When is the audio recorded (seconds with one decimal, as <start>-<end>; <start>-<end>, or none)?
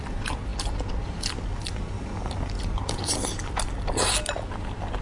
0.0-5.0